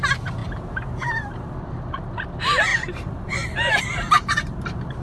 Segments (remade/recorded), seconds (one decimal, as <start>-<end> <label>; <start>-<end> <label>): 0.0-0.4 recorded; 0.4-1.5 remade; 1.5-2.7 recorded; 2.7-3.8 remade; 3.8-5.0 recorded